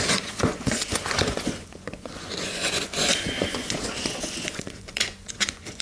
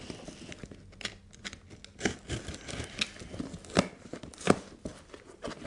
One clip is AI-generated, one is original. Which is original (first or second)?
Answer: second